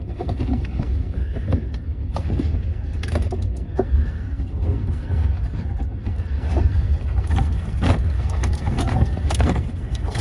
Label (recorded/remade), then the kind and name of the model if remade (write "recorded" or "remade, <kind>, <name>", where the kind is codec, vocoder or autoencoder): remade, codec, SNAC